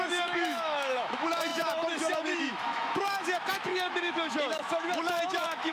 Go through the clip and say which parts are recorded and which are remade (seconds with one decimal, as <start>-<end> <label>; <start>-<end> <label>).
0.0-5.7 remade